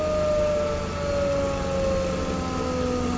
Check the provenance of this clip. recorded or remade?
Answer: recorded